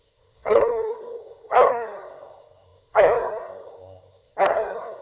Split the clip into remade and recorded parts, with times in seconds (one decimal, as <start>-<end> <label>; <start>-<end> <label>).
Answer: 0.0-5.0 remade